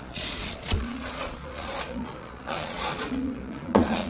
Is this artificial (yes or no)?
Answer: yes